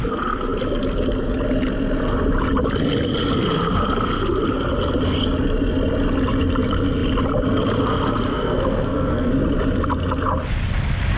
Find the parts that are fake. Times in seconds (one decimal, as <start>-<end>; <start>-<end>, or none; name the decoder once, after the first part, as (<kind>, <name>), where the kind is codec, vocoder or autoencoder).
8.3-9.3 (codec, SNAC)